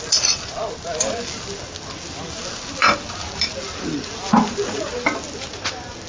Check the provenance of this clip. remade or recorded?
recorded